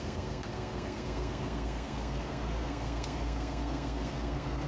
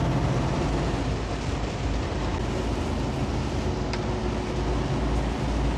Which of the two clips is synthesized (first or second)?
first